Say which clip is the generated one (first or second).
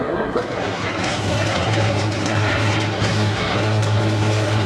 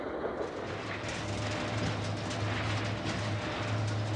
first